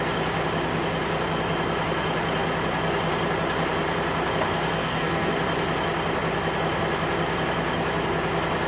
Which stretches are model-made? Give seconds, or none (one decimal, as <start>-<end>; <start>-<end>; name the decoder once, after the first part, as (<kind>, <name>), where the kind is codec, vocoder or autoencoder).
4.8-5.3 (codec, SNAC)